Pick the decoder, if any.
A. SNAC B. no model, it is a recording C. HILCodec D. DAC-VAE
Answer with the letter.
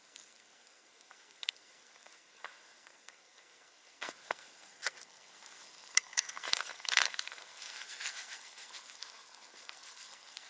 A